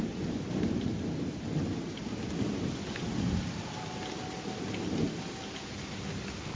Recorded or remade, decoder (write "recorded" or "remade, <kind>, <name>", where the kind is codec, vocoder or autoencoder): recorded